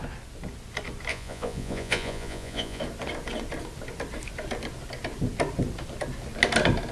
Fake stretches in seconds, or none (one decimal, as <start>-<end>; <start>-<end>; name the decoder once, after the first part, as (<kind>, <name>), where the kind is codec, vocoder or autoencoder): 1.1-2.8 (vocoder, Vocos)

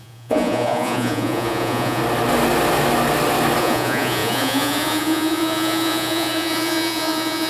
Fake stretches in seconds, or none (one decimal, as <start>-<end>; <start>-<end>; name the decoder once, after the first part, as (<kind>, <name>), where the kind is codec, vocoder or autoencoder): 0.0-2.0 (vocoder, Vocos); 3.6-7.5